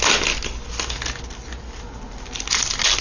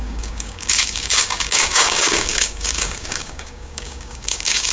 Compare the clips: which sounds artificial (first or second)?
second